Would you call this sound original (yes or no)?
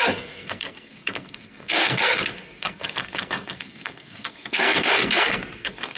no